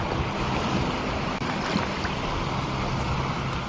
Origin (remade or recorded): recorded